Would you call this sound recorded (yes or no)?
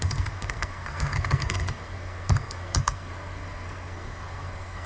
no